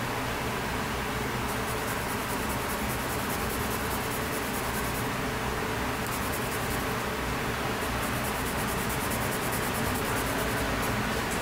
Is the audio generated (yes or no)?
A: no